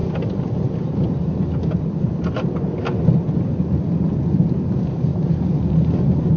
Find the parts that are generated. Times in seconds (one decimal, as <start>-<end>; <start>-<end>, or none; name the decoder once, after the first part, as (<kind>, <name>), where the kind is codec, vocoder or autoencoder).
none